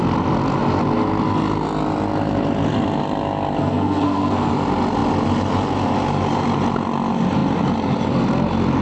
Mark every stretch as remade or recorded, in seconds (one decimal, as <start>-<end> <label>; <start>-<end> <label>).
0.0-3.6 recorded; 3.6-4.5 remade; 4.5-8.8 recorded